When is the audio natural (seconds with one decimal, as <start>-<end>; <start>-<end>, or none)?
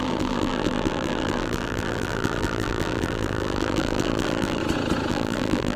4.6-5.1